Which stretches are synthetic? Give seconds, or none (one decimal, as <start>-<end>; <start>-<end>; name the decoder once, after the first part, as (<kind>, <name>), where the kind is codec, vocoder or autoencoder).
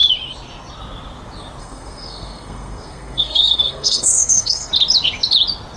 1.6-4.7 (codec, SNAC)